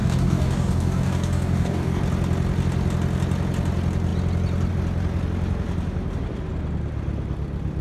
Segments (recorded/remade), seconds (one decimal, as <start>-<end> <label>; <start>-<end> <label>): 0.0-2.0 remade; 2.0-7.8 recorded